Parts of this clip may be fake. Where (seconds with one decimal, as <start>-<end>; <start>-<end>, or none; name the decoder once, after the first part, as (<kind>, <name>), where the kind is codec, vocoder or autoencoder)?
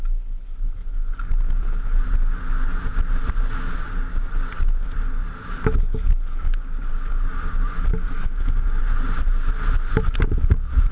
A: 7.9-8.8 (codec, DAC)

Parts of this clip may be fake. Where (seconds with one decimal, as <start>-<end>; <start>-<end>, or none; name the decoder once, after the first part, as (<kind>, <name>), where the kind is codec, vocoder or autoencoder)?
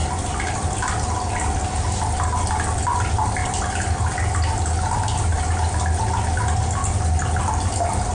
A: 1.8-3.4 (vocoder, BigVGAN v2); 7.4-8.1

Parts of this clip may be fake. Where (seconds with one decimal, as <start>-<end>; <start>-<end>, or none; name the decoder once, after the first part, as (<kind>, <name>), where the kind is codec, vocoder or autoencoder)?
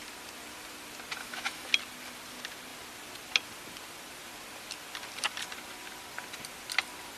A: 1.2-1.7 (autoencoder, DAC-VAE)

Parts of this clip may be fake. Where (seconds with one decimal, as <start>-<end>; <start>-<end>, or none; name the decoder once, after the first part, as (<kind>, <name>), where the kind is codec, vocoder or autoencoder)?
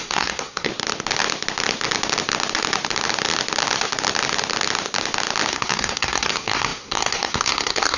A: 0.0-0.7 (codec, SNAC); 5.5-8.0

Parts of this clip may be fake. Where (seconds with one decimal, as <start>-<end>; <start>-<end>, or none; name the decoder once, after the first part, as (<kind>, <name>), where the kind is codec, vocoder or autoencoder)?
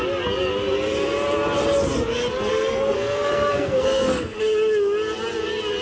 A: 2.5-4.4 (codec, SNAC)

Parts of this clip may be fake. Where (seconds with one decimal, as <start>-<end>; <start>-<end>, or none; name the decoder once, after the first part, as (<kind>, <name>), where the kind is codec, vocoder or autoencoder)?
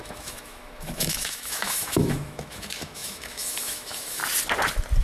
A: 0.0-4.2 (autoencoder, DAC-VAE)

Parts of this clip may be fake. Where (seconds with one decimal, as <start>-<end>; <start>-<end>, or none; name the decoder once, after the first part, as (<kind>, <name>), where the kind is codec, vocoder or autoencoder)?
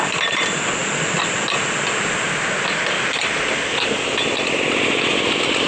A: none